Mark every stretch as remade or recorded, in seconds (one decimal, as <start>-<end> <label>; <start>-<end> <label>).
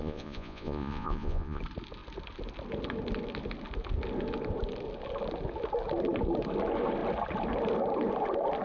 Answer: 0.0-1.6 remade; 1.6-8.6 recorded